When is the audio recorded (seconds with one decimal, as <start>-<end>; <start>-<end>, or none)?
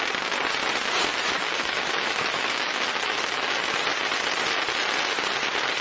0.0-1.1; 3.5-5.8